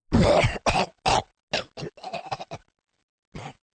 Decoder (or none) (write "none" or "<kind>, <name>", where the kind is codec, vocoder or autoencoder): none